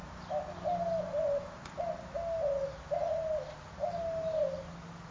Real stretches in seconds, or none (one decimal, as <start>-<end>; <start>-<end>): 0.0-5.1